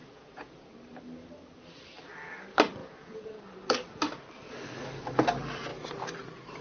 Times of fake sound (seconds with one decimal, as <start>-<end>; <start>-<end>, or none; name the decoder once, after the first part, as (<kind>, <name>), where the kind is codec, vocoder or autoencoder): 0.0-0.7 (vocoder, Vocos); 2.8-3.4